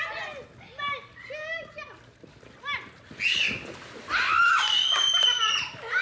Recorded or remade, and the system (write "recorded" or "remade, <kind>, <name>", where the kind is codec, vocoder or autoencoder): recorded